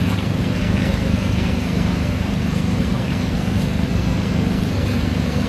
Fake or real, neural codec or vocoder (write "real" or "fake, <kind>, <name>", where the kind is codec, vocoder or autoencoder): fake, codec, SNAC